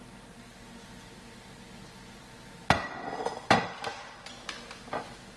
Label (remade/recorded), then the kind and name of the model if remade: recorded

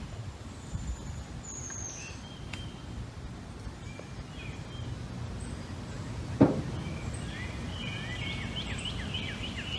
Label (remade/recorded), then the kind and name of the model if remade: recorded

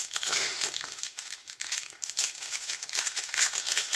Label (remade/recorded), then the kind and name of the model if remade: remade, autoencoder, DAC-VAE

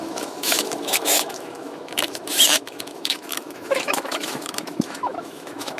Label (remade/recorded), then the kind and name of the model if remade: remade, autoencoder, DAC-VAE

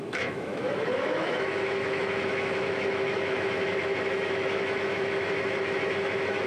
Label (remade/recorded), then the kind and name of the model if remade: remade, autoencoder, DAC-VAE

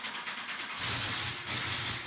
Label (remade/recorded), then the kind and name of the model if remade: recorded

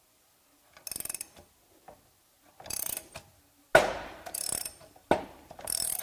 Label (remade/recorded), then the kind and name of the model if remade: recorded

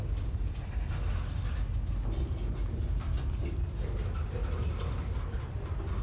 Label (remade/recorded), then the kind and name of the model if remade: recorded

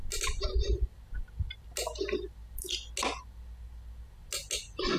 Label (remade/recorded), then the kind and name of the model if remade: recorded